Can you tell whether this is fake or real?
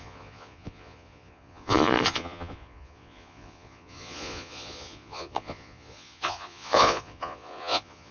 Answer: fake